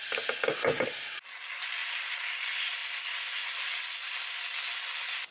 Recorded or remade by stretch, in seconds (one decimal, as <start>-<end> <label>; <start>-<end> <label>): 0.0-5.3 recorded